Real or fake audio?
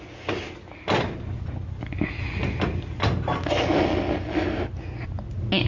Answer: real